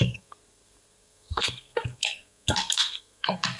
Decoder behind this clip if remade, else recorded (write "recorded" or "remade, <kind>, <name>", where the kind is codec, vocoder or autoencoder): remade, codec, SNAC